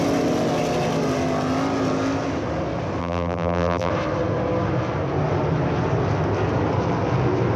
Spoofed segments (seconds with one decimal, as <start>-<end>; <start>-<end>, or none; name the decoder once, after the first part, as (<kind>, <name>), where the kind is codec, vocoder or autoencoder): 3.0-3.9 (vocoder, BigVGAN v2)